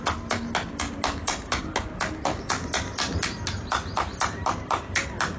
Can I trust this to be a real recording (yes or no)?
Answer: yes